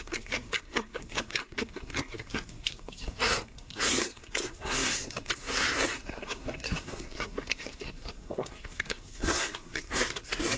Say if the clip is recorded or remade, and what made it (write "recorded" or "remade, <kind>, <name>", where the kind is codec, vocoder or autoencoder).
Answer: remade, codec, SNAC